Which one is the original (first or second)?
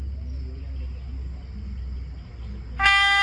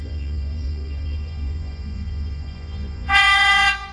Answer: first